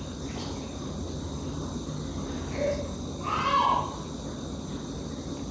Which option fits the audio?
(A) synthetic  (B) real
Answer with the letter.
B